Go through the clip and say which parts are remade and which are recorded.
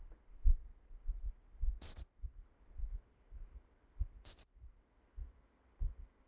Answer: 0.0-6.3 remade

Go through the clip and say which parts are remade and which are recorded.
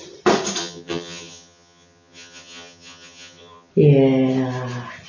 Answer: 0.0-0.6 recorded; 0.6-3.7 remade; 3.7-5.1 recorded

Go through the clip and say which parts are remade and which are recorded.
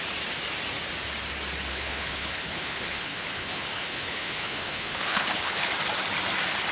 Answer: 0.0-1.7 recorded; 1.7-5.7 remade; 5.7-6.7 recorded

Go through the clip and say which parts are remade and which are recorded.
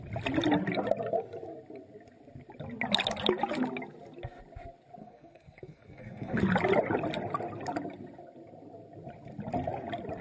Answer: 0.0-5.0 recorded; 5.0-6.4 remade; 6.4-10.2 recorded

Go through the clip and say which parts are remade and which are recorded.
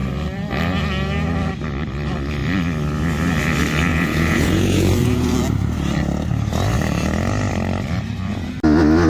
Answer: 0.0-3.9 recorded; 3.9-4.9 remade; 4.9-9.1 recorded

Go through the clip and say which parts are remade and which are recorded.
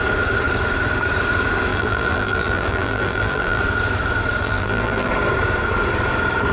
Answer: 0.0-1.7 recorded; 1.7-3.6 remade; 3.6-4.4 recorded; 4.4-5.1 remade; 5.1-6.5 recorded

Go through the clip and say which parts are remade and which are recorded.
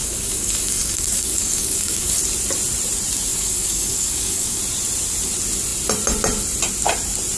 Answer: 0.0-2.2 remade; 2.2-3.3 recorded; 3.3-4.6 remade; 4.6-7.4 recorded